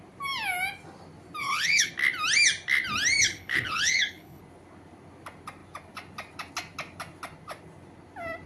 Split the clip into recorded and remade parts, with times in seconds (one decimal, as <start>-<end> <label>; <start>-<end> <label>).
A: 0.0-1.4 recorded; 1.4-1.9 remade; 1.9-3.2 recorded; 3.2-4.4 remade; 4.4-8.5 recorded